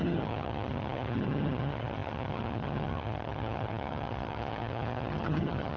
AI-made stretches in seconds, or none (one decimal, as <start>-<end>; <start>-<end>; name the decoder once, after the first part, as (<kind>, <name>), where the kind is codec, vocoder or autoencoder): 0.0-5.8 (vocoder, HiFi-GAN)